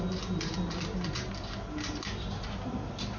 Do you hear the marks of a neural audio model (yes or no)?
no